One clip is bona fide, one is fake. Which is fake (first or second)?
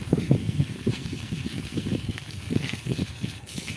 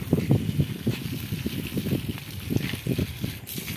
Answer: first